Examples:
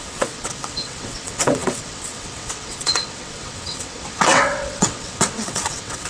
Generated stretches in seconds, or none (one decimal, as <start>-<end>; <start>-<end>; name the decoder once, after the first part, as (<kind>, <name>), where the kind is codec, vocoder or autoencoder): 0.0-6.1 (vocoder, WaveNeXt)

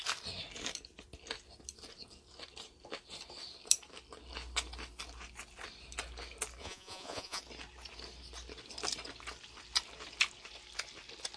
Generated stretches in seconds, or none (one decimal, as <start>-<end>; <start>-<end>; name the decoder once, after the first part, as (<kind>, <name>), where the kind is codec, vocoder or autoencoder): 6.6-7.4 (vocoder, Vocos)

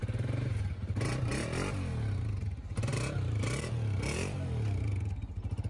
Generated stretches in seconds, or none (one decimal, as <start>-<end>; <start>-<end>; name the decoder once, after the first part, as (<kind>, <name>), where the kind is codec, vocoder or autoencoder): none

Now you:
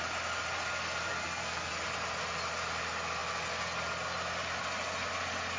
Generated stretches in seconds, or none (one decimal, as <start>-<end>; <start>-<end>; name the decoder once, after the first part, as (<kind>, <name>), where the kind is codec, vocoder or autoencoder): 1.1-1.7 (codec, SNAC)

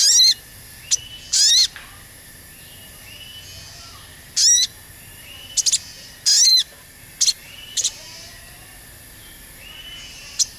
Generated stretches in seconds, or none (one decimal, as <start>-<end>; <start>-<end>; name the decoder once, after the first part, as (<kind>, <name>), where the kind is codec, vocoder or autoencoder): 6.5-7.0 (vocoder, BigVGAN v2); 7.4-8.3

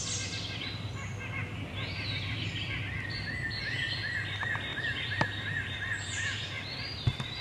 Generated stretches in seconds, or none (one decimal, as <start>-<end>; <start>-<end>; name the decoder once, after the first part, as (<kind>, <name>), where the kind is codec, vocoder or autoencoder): 1.4-2.4 (vocoder, BigVGAN v2); 4.7-6.5